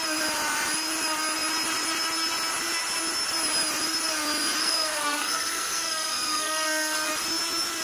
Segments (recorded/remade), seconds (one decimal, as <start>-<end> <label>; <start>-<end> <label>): 0.0-4.6 recorded; 4.6-7.1 remade; 7.1-7.8 recorded

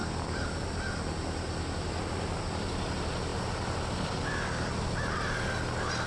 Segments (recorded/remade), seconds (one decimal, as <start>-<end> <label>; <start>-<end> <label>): 0.0-6.1 recorded

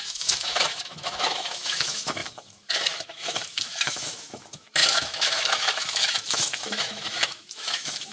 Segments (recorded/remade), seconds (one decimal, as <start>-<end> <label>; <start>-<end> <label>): 0.0-8.1 remade

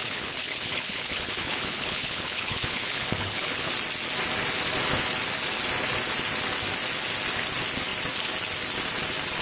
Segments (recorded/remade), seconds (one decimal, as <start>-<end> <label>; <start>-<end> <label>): 0.0-3.7 remade; 3.7-9.4 recorded

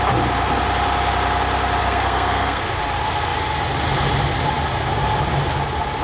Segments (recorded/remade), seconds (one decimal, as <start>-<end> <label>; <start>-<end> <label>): 0.0-1.8 recorded; 1.8-2.6 remade; 2.6-6.0 recorded

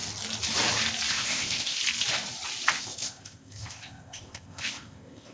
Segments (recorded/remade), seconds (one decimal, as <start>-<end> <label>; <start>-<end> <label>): 0.0-1.1 recorded; 1.1-1.8 remade; 1.8-2.8 recorded; 2.8-5.3 remade

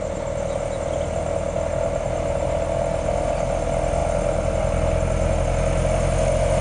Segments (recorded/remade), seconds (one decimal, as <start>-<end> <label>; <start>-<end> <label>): 0.0-6.6 recorded